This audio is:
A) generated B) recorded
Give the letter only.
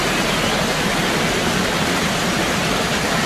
B